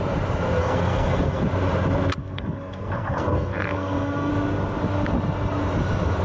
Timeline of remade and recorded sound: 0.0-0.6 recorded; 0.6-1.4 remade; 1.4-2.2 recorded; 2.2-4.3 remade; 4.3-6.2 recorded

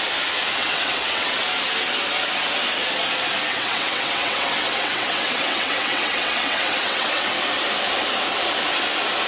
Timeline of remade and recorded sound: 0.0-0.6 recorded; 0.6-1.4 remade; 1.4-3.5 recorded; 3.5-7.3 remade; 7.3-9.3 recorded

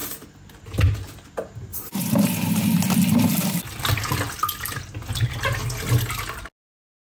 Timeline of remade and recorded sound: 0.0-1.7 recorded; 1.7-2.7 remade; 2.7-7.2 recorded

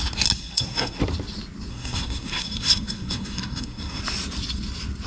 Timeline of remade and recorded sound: 0.0-0.4 recorded; 0.4-1.0 remade; 1.0-1.7 recorded; 1.7-4.0 remade; 4.0-5.1 recorded

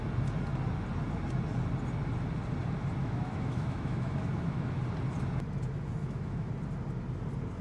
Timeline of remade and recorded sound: 0.0-3.0 recorded; 3.0-4.8 remade; 4.8-6.0 recorded; 6.0-6.5 remade; 6.5-7.6 recorded

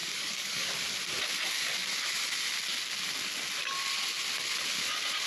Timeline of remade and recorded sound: 0.0-0.7 remade; 0.7-5.3 recorded

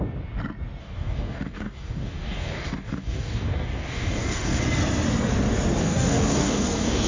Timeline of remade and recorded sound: 0.0-0.8 recorded; 0.8-4.6 remade; 4.6-5.8 recorded; 5.8-7.1 remade